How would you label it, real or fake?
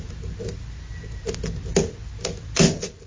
real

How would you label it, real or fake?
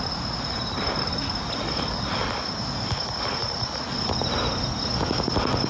real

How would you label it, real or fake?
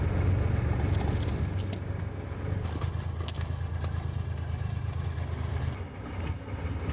real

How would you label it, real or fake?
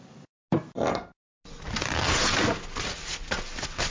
real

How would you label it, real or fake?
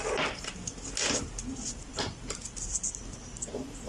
real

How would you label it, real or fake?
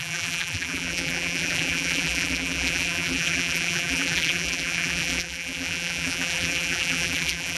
fake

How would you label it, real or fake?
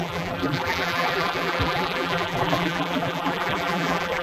fake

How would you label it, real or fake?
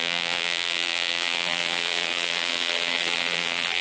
fake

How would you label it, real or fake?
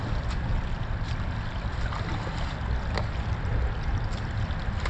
real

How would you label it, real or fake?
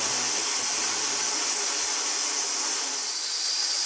real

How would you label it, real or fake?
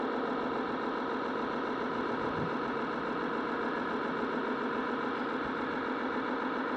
real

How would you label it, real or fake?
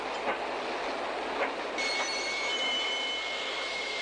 real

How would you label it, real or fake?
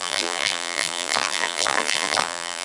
fake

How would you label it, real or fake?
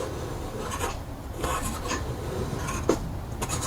fake